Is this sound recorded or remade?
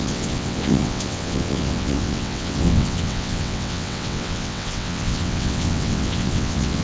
remade